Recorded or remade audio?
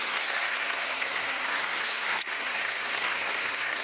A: remade